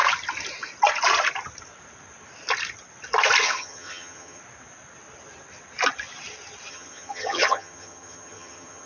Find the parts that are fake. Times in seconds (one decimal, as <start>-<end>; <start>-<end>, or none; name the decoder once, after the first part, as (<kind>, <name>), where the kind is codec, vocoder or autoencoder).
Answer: 3.4-4.4 (vocoder, HiFi-GAN); 6.7-8.9